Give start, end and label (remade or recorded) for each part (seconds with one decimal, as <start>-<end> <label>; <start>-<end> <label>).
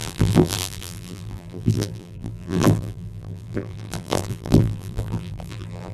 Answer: 0.0-5.9 remade